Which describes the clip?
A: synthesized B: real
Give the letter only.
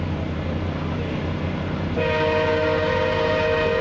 B